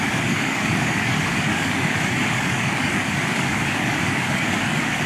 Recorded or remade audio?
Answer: remade